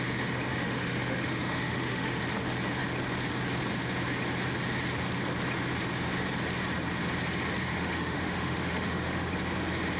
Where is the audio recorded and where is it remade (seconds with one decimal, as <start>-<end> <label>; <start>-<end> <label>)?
0.0-0.5 recorded; 0.5-2.2 remade; 2.2-7.7 recorded; 7.7-9.3 remade; 9.3-10.0 recorded